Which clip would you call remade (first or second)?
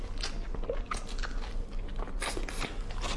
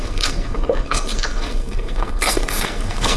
second